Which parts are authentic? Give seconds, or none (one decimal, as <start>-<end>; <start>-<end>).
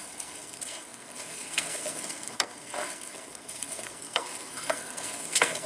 none